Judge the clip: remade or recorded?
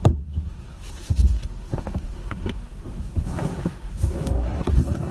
remade